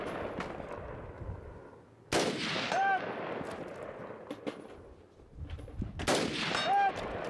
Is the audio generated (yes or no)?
no